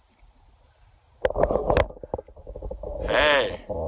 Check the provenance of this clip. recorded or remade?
recorded